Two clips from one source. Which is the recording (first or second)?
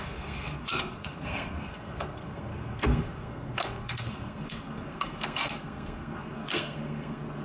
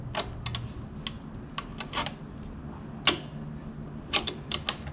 second